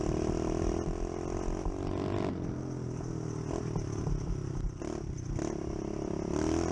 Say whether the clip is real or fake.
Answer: real